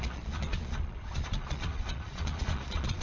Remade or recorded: remade